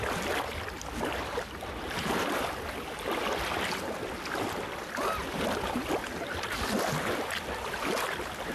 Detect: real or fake real